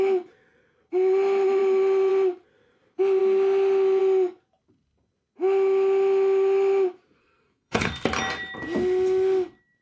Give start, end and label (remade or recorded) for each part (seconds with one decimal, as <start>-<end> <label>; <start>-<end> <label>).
0.0-7.2 recorded; 7.2-7.9 remade; 7.9-9.8 recorded